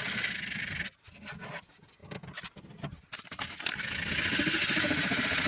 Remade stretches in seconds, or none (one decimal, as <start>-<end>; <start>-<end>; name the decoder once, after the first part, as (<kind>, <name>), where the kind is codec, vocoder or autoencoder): none